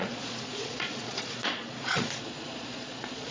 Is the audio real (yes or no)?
no